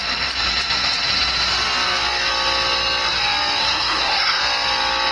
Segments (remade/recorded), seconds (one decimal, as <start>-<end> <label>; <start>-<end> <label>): 0.0-3.6 recorded; 3.6-4.4 remade; 4.4-5.1 recorded